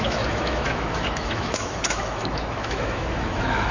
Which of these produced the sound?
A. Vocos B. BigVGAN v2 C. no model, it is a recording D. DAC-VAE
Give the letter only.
D